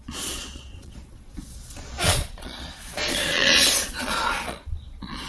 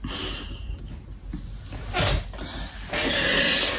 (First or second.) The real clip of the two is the second